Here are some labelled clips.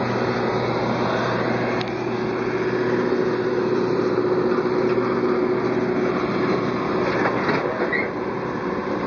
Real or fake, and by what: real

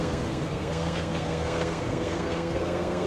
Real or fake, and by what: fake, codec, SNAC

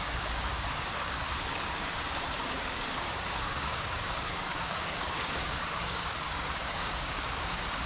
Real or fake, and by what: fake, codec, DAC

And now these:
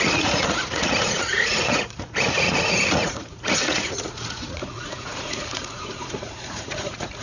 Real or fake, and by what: fake, vocoder, Vocos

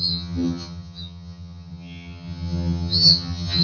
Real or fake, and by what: fake, vocoder, HiFi-GAN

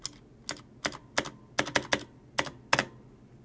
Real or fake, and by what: real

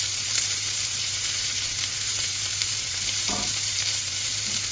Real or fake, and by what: fake, vocoder, BigVGAN v2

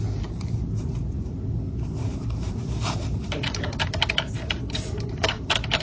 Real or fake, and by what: fake, vocoder, BigVGAN v2